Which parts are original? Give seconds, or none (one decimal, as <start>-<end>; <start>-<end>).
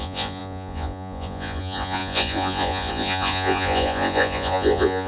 none